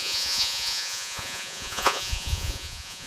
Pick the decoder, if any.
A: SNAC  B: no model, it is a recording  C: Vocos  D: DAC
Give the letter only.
C